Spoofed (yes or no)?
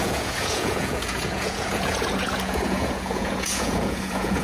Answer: yes